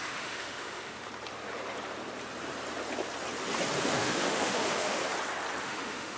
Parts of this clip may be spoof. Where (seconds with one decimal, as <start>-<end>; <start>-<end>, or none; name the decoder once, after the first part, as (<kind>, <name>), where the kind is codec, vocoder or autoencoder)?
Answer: 0.0-1.1 (autoencoder, DAC-VAE); 3.9-5.0; 5.6-6.2